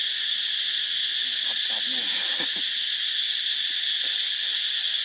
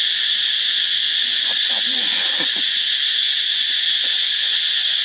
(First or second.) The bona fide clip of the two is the first